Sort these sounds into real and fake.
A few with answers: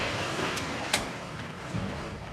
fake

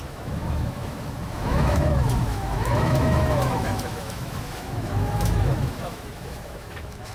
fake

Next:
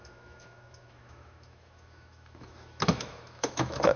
fake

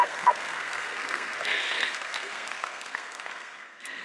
fake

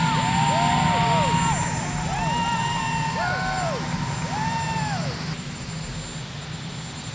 real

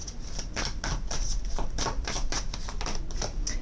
real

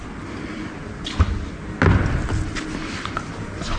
real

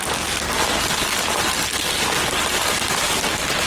real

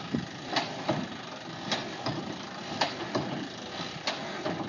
real